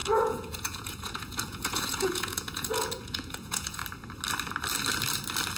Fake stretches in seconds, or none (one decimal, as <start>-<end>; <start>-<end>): 0.0-3.8